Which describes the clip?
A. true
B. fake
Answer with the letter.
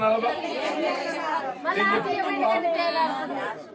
A